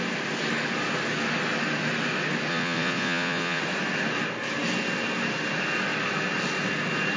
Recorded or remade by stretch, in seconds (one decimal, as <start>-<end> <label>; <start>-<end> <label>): 0.0-2.5 recorded; 2.5-3.6 remade; 3.6-7.2 recorded